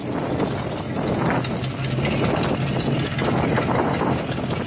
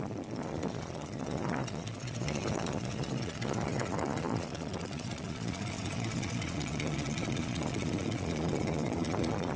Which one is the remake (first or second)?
second